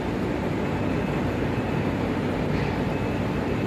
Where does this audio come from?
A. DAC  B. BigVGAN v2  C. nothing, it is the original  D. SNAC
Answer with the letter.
C